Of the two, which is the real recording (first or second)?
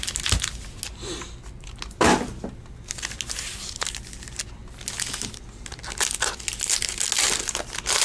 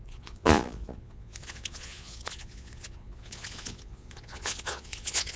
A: first